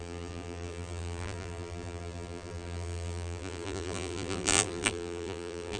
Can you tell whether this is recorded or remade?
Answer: remade